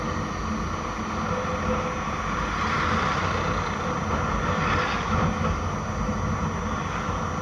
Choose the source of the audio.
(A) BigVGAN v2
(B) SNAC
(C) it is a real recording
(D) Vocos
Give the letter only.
C